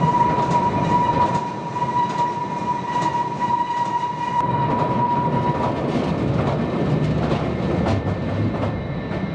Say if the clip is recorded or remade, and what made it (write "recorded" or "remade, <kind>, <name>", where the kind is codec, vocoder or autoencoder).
recorded